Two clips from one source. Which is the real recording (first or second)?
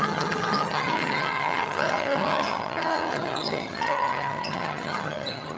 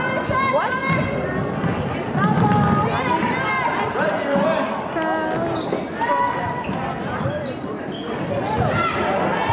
second